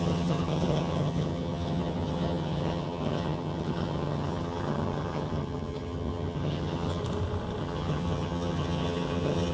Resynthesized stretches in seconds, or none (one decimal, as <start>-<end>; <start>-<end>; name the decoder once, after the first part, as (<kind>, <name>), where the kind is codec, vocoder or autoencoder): 0.0-7.0 (vocoder, HiFi-GAN); 7.6-9.5

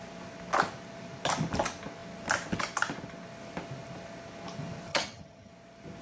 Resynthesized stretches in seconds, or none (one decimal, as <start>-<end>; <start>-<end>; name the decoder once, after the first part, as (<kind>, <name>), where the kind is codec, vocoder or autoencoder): 4.9-5.5 (vocoder, HiFi-GAN)